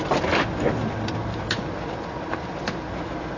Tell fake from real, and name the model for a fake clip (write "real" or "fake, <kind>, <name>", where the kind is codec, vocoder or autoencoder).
real